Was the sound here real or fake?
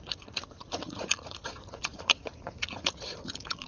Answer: fake